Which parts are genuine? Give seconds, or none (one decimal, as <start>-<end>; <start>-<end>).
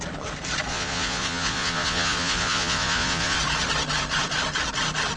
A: 0.0-0.7; 3.4-5.2